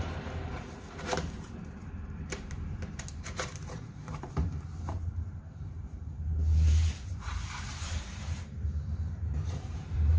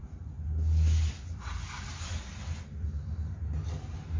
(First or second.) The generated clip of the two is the first